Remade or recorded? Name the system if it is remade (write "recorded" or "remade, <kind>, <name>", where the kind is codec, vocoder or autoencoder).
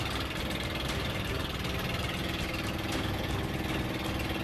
recorded